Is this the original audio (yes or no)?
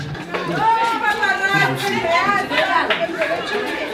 yes